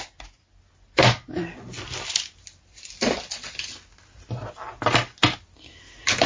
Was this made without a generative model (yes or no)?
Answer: yes